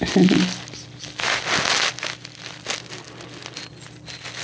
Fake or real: real